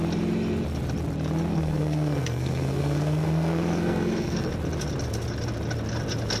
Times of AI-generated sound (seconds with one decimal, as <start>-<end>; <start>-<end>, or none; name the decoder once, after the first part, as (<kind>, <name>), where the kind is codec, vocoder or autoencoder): 1.5-4.5 (codec, SNAC)